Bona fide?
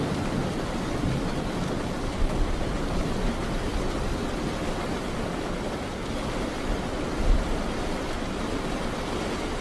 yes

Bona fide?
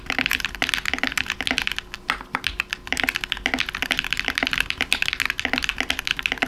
yes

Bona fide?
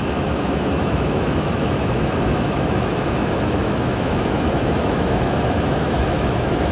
no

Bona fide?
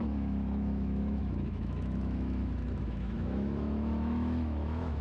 no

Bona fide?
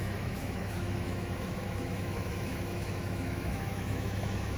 no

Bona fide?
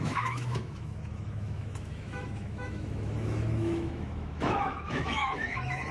no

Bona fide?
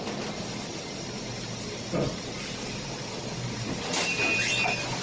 yes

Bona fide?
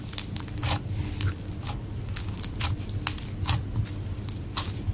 yes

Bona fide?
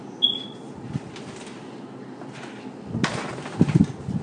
yes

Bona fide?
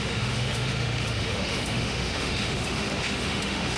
no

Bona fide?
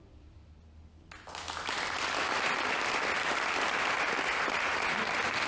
yes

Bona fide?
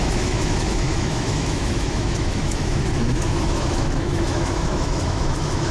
no